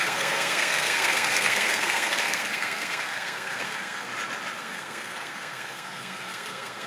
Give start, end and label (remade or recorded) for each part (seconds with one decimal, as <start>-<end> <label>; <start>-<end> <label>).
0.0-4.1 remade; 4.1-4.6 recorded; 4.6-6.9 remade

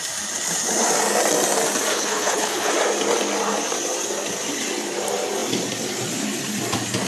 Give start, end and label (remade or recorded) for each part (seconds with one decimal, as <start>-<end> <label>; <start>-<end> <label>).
0.0-1.9 recorded; 1.9-2.7 remade; 2.7-7.1 recorded

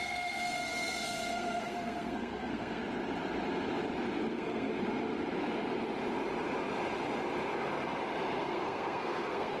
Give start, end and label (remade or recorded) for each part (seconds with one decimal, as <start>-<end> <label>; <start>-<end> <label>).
0.0-2.8 remade; 2.8-4.3 recorded; 4.3-4.7 remade; 4.7-8.4 recorded; 8.4-9.6 remade

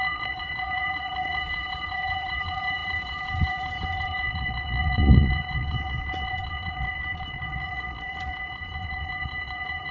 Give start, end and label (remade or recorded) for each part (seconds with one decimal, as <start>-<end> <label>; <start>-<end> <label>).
0.0-9.9 remade

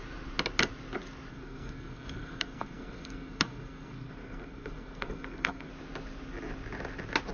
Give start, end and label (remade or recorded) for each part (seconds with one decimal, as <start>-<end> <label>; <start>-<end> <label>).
0.0-1.3 recorded; 1.3-5.7 remade; 5.7-7.3 recorded

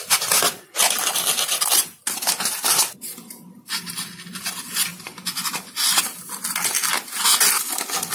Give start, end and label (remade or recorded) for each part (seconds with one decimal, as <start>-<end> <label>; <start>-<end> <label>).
0.0-8.1 recorded

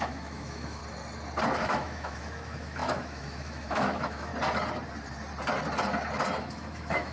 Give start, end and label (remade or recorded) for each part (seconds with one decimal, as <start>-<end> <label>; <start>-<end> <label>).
0.0-0.8 remade; 0.8-1.5 recorded; 1.5-4.3 remade; 4.3-6.4 recorded; 6.4-7.1 remade

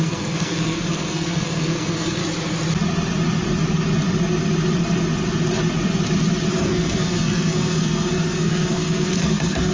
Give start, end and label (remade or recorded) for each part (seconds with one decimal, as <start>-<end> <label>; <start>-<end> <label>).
0.0-2.2 remade; 2.2-6.5 recorded; 6.5-9.7 remade